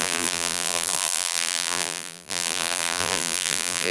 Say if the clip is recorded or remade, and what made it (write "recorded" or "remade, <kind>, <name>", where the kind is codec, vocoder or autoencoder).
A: remade, vocoder, BigVGAN v2